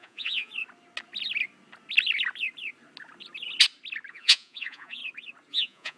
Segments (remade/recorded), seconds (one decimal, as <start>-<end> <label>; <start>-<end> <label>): 0.0-0.5 remade; 0.5-4.1 recorded; 4.1-5.0 remade; 5.0-5.5 recorded; 5.5-6.0 remade